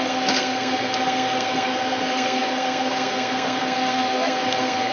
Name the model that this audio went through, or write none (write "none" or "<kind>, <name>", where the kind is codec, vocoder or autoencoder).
codec, SNAC